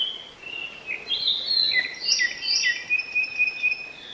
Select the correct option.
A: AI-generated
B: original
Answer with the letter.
B